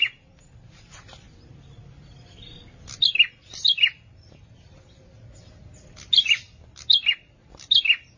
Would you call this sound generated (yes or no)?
no